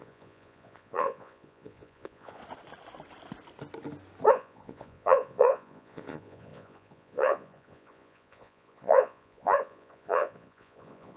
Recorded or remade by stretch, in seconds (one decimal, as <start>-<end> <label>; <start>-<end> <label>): 0.0-2.4 remade; 2.4-4.3 recorded; 4.3-11.2 remade